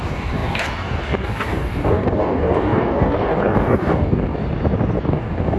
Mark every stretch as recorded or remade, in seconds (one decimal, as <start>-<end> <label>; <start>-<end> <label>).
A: 0.0-4.4 remade; 4.4-5.0 recorded; 5.0-5.6 remade